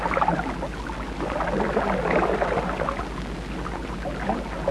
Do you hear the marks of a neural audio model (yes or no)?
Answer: no